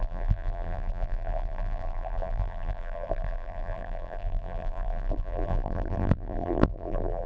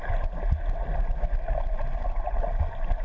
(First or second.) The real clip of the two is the second